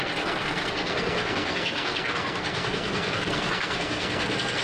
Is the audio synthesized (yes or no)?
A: yes